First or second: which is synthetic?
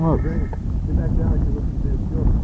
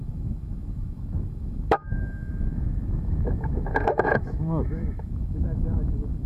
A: second